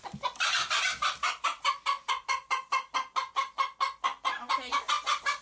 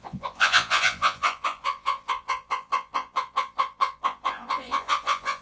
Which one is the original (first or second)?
first